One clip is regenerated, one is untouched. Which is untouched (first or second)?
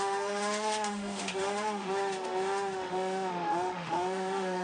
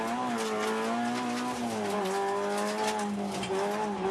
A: second